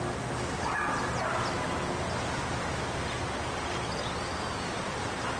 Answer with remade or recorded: recorded